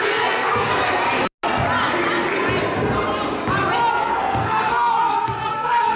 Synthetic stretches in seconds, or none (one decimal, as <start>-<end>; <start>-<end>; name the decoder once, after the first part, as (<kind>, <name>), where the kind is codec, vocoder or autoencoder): 0.0-0.7 (codec, SNAC); 3.9-6.0

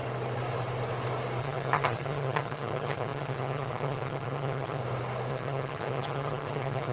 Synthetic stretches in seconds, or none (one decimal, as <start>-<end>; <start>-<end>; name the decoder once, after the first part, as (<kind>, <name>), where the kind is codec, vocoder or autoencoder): 1.4-4.8 (vocoder, HiFi-GAN); 5.3-6.9

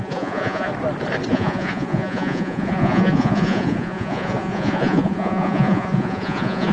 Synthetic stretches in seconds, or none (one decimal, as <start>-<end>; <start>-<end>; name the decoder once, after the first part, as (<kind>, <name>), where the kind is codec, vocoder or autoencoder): 0.0-0.7 (vocoder, Vocos); 1.3-6.7